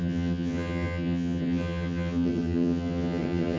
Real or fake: fake